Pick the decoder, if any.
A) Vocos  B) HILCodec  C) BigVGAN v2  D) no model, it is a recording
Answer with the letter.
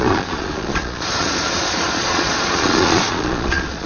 A